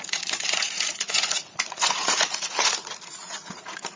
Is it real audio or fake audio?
fake